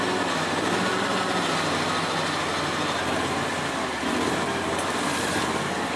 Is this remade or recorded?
recorded